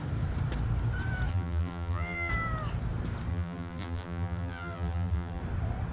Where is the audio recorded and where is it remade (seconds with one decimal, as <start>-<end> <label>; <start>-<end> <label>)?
0.0-1.3 recorded; 1.3-2.3 remade; 2.3-3.3 recorded; 3.3-5.4 remade; 5.4-5.9 recorded

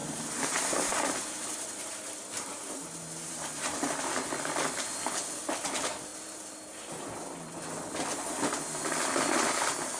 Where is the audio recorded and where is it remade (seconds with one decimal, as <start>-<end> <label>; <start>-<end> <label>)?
0.0-4.1 remade; 4.1-6.1 recorded; 6.1-6.9 remade; 6.9-10.0 recorded

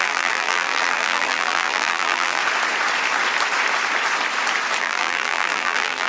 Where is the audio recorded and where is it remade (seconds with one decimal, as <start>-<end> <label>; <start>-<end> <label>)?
0.0-2.4 remade; 2.4-4.8 recorded; 4.8-6.1 remade

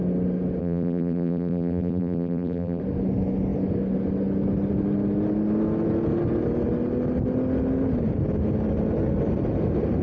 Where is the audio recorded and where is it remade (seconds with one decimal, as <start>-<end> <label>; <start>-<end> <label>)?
0.0-0.6 recorded; 0.6-2.8 remade; 2.8-10.0 recorded

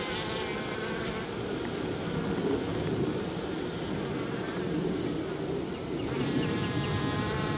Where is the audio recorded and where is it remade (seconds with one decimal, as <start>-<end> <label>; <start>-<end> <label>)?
0.0-7.6 recorded